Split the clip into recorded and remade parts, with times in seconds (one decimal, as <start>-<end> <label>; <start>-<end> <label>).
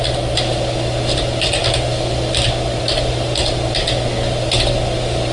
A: 0.0-5.3 recorded